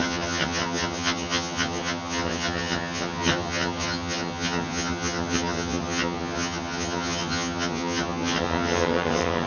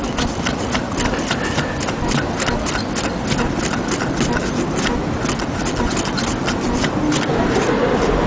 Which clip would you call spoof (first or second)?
first